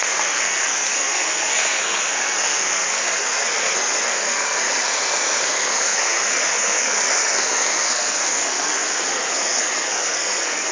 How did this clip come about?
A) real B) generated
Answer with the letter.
B